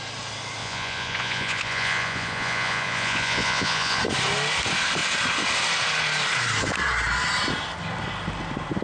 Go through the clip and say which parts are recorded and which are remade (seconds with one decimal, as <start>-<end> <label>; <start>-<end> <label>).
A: 0.0-0.6 recorded; 0.6-4.0 remade; 4.0-8.8 recorded